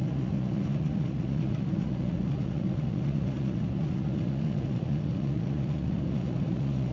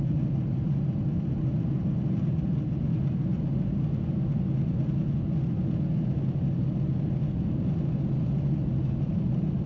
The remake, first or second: first